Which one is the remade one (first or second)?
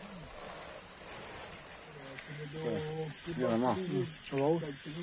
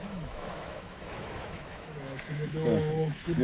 second